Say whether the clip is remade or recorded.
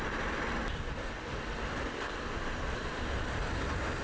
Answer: recorded